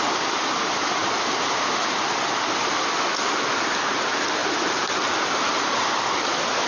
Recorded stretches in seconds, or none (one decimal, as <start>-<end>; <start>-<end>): 0.0-6.7